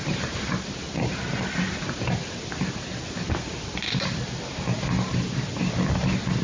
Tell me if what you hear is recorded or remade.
recorded